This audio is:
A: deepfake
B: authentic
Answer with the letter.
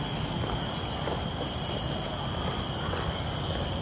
B